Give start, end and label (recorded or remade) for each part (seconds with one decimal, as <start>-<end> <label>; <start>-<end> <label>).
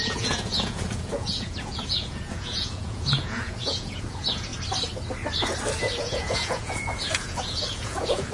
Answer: 0.0-4.5 remade; 4.5-6.0 recorded; 6.0-8.3 remade